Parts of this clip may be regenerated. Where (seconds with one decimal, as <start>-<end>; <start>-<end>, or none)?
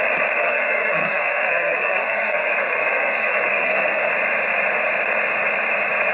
0.4-4.1